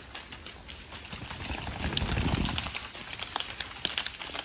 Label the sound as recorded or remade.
recorded